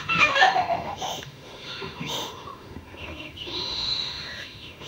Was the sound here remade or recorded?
remade